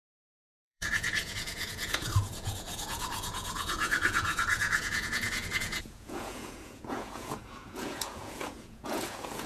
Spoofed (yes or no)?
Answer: yes